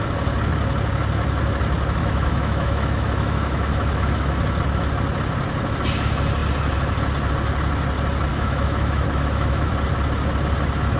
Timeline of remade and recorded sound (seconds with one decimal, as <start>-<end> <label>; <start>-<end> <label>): 0.0-2.0 recorded; 2.0-4.4 remade; 4.4-8.3 recorded; 8.3-9.7 remade; 9.7-11.0 recorded